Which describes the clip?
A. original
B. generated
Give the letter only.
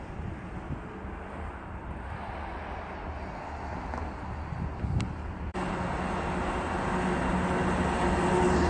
A